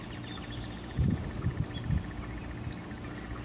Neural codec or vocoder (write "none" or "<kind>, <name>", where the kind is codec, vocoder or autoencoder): none